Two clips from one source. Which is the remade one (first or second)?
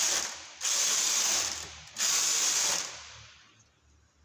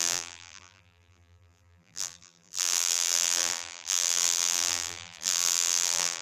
second